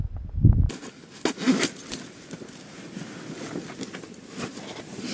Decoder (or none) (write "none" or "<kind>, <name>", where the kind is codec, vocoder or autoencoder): none